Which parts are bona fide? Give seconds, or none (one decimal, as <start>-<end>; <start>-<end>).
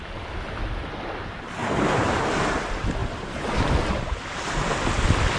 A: 0.0-1.6; 2.2-3.0; 4.8-5.4